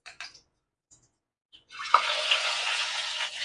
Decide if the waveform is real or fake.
fake